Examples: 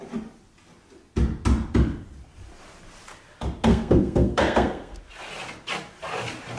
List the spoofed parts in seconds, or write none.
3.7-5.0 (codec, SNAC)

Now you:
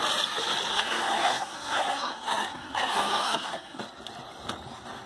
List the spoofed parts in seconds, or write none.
0.7-3.8 (codec, SNAC)

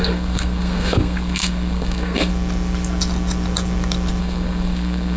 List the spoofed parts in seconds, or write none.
0.0-2.3 (codec, SNAC); 4.2-5.2

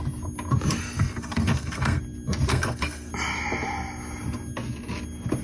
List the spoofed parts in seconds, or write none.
0.8-2.0 (codec, SNAC); 2.5-3.1